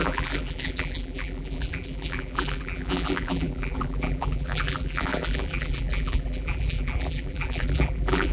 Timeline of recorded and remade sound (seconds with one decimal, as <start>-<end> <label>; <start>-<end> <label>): 0.0-8.3 remade